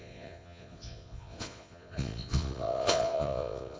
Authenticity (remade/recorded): remade